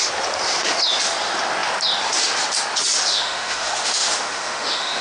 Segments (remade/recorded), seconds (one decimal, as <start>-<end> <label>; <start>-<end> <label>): 0.0-3.1 recorded; 3.1-5.0 remade